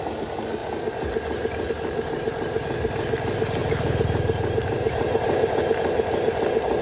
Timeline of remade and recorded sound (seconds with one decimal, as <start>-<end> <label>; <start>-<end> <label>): 0.0-3.6 recorded; 3.6-5.6 remade; 5.6-6.8 recorded